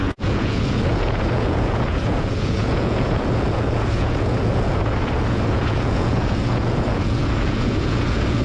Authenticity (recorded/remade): remade